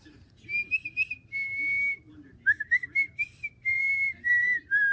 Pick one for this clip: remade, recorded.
recorded